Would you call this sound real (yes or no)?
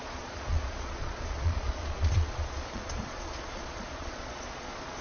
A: no